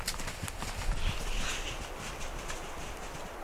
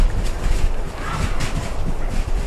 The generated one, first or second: second